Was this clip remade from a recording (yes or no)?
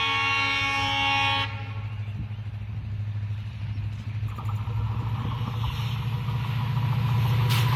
no